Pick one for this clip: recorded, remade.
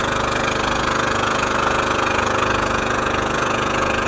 remade